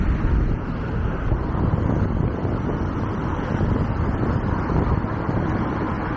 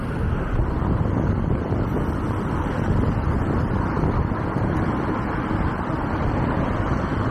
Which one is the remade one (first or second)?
second